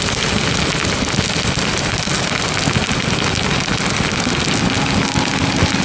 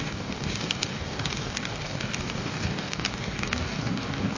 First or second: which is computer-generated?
second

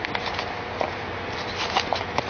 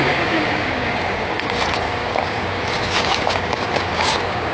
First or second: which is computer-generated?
second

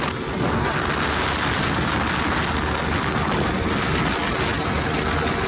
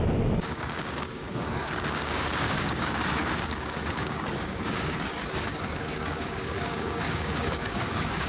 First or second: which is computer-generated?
second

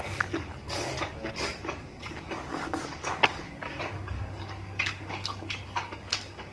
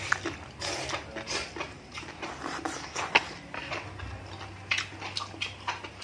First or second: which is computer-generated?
first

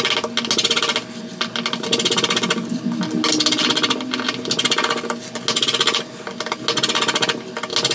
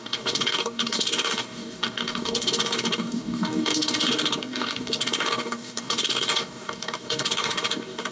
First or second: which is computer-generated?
second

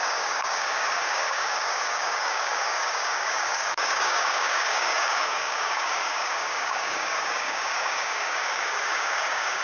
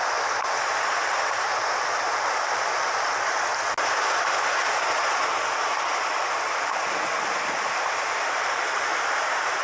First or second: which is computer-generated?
first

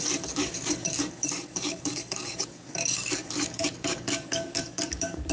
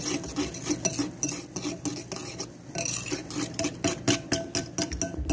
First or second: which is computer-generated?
first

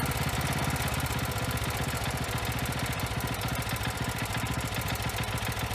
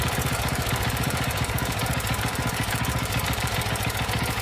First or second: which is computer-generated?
second